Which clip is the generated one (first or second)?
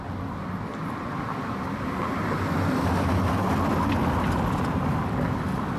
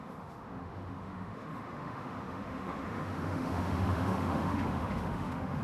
second